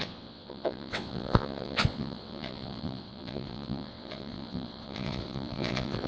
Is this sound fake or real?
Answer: fake